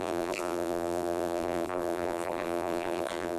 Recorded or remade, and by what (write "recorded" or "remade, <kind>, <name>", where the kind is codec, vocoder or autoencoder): remade, vocoder, BigVGAN v2